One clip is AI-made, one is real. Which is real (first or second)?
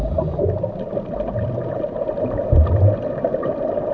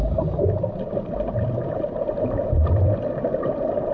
first